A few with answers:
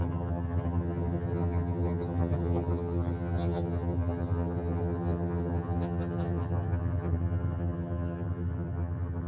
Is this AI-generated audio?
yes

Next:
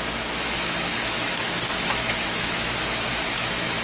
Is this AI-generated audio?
yes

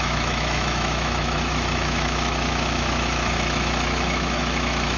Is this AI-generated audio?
yes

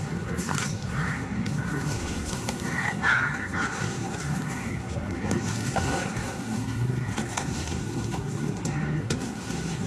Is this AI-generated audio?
yes